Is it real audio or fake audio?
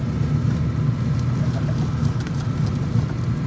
real